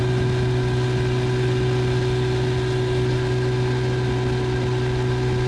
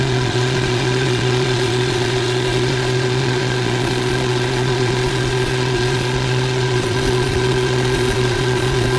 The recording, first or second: first